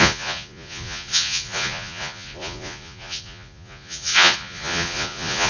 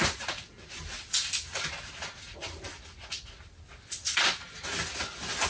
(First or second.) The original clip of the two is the second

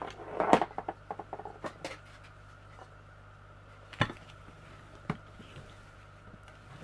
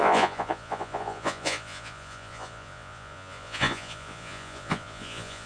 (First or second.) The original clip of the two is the first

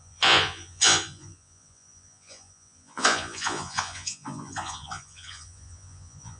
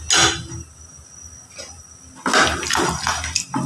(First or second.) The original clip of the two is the second